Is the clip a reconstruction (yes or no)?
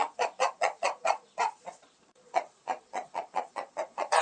yes